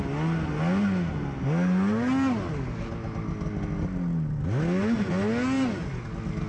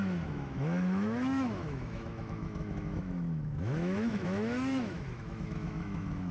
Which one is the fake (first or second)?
second